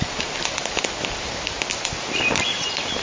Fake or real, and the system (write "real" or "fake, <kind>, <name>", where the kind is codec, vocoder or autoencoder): real